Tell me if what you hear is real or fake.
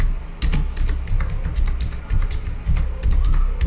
real